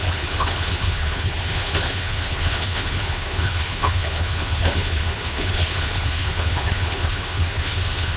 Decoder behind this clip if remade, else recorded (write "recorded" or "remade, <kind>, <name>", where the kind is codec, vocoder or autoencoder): remade, codec, HILCodec